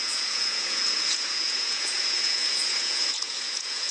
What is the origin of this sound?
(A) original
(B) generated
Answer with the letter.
B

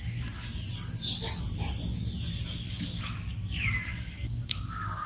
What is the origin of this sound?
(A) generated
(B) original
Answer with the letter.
B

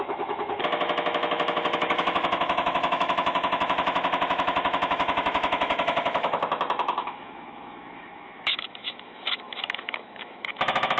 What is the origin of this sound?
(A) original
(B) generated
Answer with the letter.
B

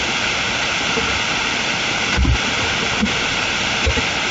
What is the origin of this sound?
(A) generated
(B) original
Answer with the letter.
B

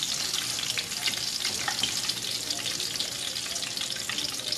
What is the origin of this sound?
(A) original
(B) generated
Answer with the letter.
A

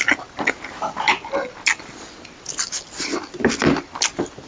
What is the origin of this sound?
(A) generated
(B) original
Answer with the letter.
B